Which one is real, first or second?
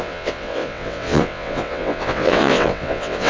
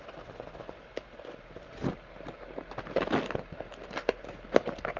second